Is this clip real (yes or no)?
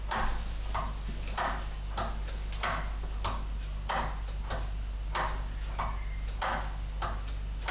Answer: yes